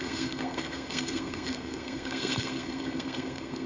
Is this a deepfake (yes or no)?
yes